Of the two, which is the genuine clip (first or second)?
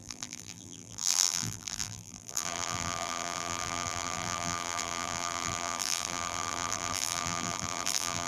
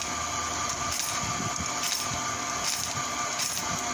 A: second